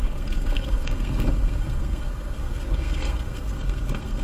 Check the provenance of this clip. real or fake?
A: fake